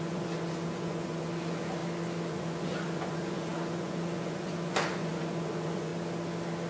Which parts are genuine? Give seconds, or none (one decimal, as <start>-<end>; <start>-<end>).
1.8-2.3; 5.9-6.7